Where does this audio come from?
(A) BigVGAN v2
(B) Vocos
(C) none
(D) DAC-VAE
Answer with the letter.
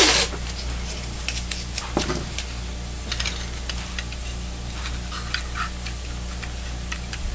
C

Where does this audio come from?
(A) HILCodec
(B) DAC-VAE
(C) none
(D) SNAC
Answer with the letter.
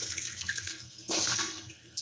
D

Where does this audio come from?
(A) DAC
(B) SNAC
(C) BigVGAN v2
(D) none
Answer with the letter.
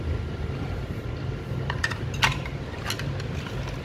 D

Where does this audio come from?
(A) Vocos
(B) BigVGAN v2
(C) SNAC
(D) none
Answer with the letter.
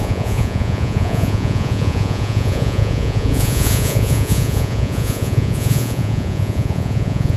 A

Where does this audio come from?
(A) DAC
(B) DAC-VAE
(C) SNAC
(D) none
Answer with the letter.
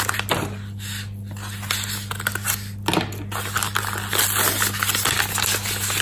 D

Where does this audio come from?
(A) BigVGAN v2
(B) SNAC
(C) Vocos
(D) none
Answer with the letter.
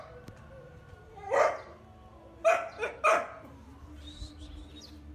D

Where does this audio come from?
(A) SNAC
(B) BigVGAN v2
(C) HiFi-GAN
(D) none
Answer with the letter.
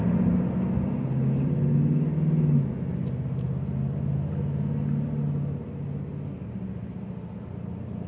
D